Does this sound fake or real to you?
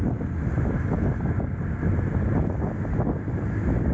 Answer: real